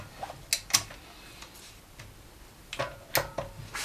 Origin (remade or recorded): recorded